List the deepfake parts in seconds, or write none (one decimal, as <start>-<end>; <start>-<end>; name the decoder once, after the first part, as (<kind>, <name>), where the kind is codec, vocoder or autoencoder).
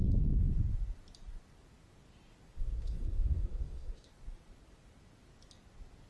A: 2.6-4.1 (codec, SNAC)